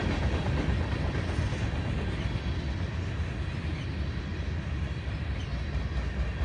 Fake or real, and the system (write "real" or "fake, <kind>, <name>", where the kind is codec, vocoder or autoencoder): real